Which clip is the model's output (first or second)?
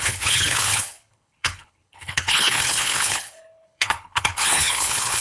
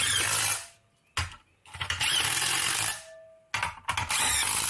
first